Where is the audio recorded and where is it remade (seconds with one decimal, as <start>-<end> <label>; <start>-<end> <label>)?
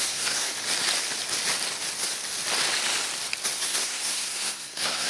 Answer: 0.0-0.5 remade; 0.5-3.6 recorded; 3.6-5.1 remade